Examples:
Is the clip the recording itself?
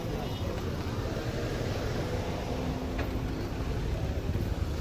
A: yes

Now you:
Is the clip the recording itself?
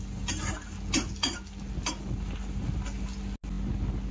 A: yes